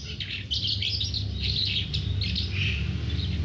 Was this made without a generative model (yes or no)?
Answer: yes